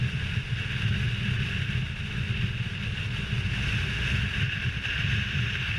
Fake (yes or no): no